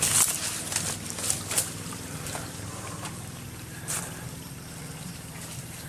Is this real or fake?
fake